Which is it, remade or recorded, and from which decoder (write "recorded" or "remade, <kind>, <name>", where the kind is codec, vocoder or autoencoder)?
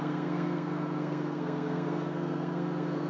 remade, codec, SNAC